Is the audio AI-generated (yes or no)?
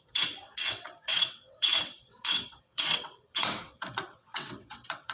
yes